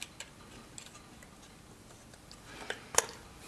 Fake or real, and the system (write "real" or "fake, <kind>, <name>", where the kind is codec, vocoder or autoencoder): real